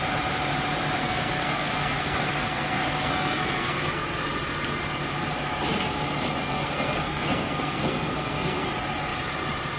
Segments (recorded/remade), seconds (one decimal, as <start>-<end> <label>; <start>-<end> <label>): 0.0-1.0 recorded; 1.0-4.2 remade; 4.2-6.4 recorded; 6.4-8.7 remade; 8.7-9.8 recorded